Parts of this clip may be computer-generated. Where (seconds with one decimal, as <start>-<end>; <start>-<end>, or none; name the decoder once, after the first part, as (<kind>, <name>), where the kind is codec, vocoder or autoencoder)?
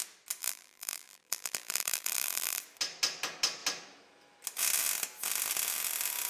0.4-2.6 (vocoder, BigVGAN v2)